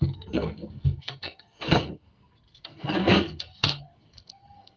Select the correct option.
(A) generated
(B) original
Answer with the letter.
A